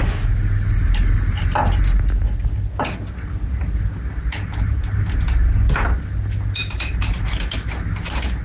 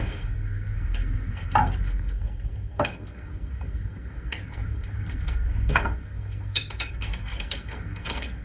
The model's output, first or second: second